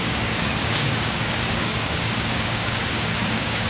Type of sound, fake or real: fake